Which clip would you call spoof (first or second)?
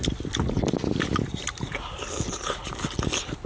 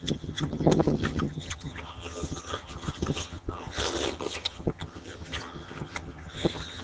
second